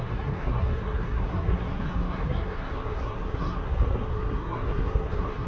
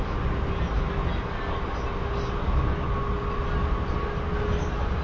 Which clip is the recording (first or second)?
second